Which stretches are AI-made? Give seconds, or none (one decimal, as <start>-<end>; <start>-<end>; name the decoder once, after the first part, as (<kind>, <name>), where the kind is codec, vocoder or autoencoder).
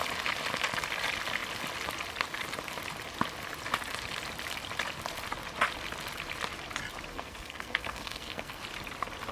7.1-8.6 (codec, SNAC)